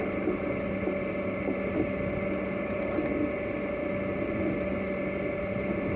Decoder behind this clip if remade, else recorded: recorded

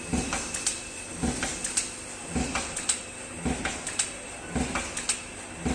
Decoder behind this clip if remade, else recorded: recorded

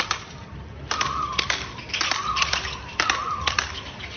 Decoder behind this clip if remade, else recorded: recorded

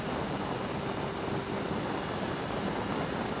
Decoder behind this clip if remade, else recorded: recorded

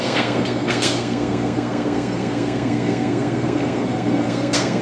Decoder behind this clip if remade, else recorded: remade, codec, SNAC